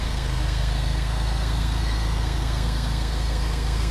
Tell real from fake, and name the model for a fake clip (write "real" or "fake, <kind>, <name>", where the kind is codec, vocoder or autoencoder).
fake, codec, SNAC